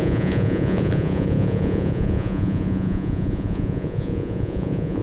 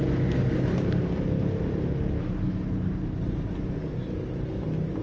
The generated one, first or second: first